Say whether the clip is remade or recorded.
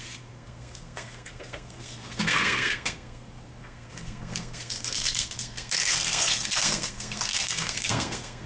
remade